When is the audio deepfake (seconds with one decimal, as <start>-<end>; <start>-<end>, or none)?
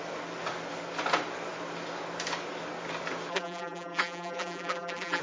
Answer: 3.3-5.2